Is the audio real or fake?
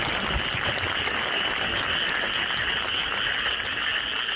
real